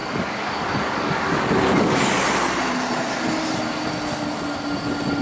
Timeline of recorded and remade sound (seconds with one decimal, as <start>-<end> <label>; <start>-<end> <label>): 0.0-2.0 remade; 2.0-5.2 recorded